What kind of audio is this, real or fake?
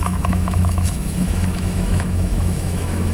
fake